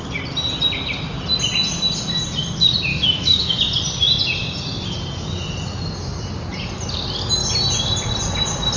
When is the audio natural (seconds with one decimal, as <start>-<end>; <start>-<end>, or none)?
0.0-2.9; 3.6-8.8